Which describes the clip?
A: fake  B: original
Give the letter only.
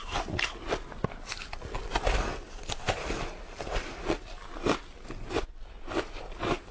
B